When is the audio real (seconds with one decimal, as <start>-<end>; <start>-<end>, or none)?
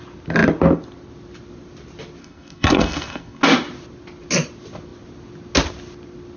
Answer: 0.0-2.2; 3.4-6.4